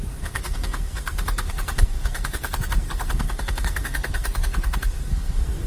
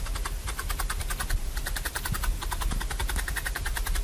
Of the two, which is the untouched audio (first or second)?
second